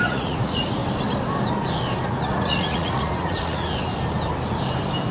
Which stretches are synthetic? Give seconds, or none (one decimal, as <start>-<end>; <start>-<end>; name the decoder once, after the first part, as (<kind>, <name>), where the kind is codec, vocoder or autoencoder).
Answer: 0.0-0.8 (vocoder, Vocos); 2.1-3.9